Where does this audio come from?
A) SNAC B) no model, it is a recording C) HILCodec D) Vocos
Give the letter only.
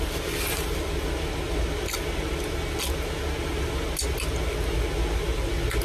B